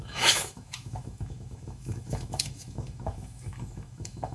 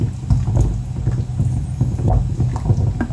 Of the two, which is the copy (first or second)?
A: first